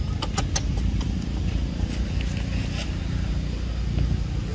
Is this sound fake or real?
real